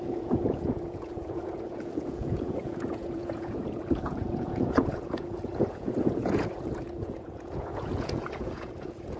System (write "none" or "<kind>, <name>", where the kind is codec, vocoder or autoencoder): vocoder, Vocos